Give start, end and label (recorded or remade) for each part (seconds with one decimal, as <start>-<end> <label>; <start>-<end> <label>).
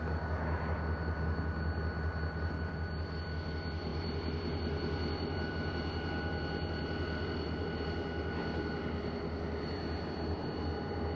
0.0-11.2 recorded